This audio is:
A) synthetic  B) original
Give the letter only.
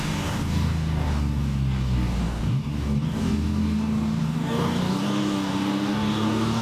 A